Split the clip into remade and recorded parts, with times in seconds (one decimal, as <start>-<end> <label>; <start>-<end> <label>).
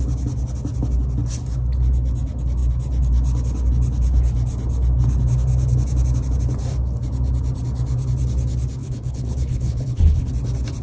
0.0-8.8 recorded; 8.8-10.3 remade; 10.3-10.8 recorded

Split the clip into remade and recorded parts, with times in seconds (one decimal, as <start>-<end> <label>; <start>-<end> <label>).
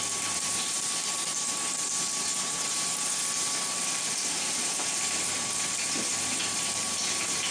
0.0-7.5 remade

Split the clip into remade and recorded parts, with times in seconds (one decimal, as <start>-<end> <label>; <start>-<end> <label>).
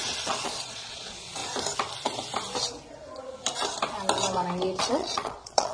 0.0-1.4 remade; 1.4-4.8 recorded; 4.8-5.7 remade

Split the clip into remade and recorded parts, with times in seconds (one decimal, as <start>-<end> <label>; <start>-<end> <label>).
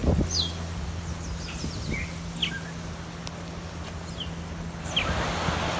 0.0-5.8 recorded